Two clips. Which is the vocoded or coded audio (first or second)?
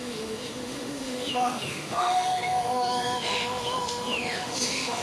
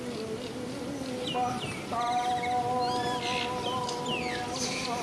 first